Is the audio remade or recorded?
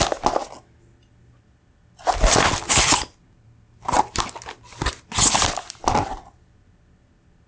recorded